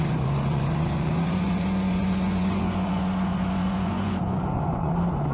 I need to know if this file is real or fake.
fake